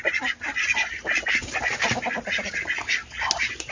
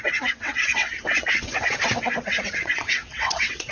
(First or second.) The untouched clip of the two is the first